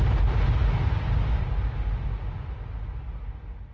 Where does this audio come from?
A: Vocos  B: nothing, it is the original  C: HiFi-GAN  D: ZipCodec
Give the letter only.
B